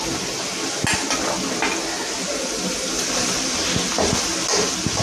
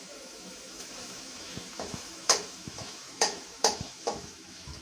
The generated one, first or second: second